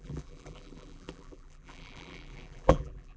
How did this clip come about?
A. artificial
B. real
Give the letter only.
A